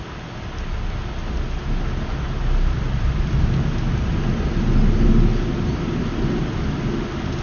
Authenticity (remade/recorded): recorded